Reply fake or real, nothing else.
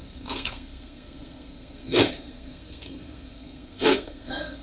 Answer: fake